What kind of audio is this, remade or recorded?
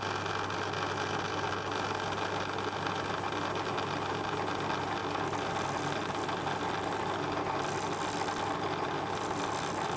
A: recorded